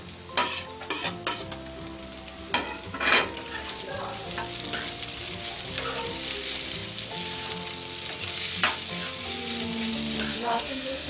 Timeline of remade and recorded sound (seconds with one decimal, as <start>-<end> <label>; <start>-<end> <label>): 0.0-10.3 recorded; 10.3-11.1 remade